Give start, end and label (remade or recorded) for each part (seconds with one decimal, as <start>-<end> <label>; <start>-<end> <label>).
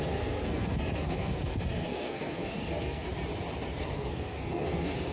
0.0-3.1 remade; 3.1-3.8 recorded; 3.8-5.1 remade